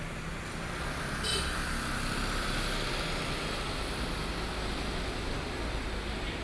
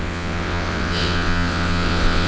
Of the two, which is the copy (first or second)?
second